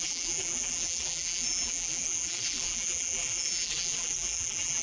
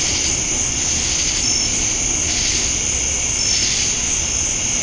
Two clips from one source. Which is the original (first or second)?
second